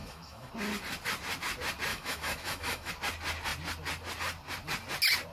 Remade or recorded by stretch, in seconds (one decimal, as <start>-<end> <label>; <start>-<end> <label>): 0.0-0.5 remade; 0.5-1.9 recorded; 1.9-2.9 remade; 2.9-5.3 recorded